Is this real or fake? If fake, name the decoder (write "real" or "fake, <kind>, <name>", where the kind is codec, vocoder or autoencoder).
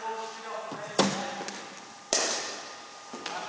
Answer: real